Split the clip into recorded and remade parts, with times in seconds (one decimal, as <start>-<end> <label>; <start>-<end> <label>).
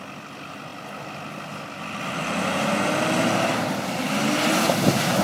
0.0-0.7 recorded; 0.7-3.8 remade; 3.8-5.2 recorded